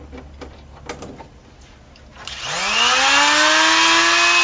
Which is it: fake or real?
real